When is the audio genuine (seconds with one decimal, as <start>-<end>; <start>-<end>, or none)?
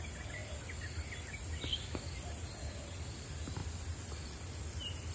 0.0-5.1